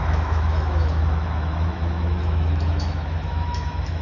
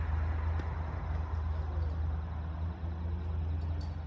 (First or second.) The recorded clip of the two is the second